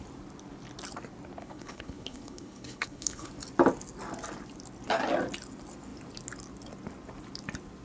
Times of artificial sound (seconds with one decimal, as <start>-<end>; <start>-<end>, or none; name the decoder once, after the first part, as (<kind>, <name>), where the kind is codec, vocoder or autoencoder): 1.4-3.3 (codec, HILCodec)